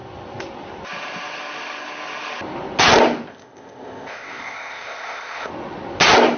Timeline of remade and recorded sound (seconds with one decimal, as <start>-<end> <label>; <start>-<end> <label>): 0.0-3.3 recorded; 3.3-5.5 remade; 5.5-6.4 recorded